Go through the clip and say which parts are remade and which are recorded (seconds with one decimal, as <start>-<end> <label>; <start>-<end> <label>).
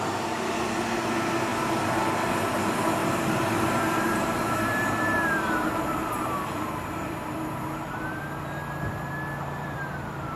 0.0-3.0 recorded; 3.0-8.2 remade; 8.2-10.4 recorded